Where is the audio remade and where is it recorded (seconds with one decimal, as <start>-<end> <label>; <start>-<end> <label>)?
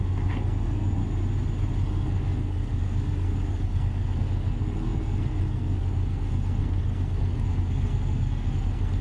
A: 0.0-1.0 remade; 1.0-1.8 recorded; 1.8-9.0 remade